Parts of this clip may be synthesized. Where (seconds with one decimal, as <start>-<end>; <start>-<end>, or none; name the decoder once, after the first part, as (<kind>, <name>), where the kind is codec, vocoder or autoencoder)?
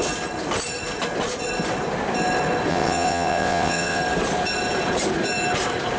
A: 2.7-4.0 (vocoder, WaveNeXt)